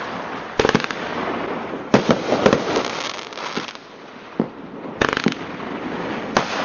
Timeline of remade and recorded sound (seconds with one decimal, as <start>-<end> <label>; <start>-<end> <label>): 0.0-6.6 recorded